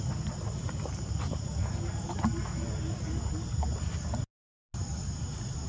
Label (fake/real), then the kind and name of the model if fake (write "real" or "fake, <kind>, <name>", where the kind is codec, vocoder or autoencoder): real